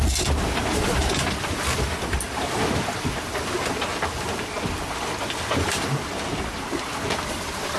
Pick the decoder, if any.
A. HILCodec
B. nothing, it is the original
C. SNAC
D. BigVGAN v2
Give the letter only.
B